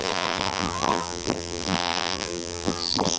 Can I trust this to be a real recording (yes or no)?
no